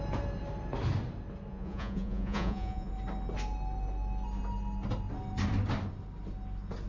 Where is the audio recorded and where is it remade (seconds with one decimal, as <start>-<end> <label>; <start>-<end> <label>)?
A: 0.0-1.5 recorded; 1.5-2.9 remade; 2.9-6.9 recorded